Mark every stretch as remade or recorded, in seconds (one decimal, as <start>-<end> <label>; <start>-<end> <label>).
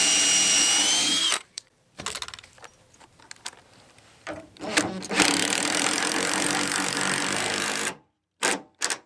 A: 0.0-1.2 recorded; 1.2-2.0 remade; 2.0-5.4 recorded; 5.4-8.4 remade; 8.4-9.1 recorded